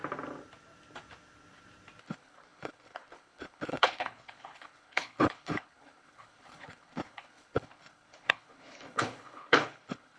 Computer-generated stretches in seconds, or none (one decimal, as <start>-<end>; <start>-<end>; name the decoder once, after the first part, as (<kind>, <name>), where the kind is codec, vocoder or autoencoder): 2.0-10.2 (codec, HILCodec)